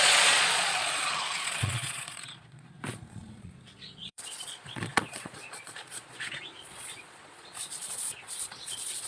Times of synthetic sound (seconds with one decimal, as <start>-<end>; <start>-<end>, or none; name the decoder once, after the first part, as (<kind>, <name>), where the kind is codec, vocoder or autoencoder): 0.0-9.1 (vocoder, Vocos)